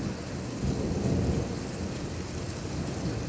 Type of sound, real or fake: real